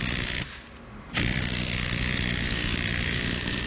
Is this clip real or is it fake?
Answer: real